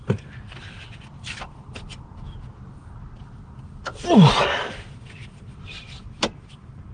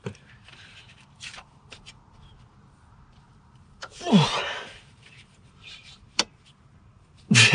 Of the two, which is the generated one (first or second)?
second